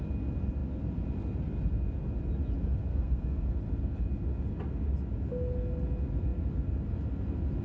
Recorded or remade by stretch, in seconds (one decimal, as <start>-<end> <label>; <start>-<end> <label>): 0.0-2.9 recorded; 2.9-3.5 remade; 3.5-7.6 recorded